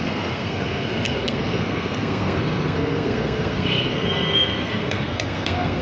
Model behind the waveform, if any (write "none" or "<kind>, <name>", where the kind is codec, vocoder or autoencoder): codec, SNAC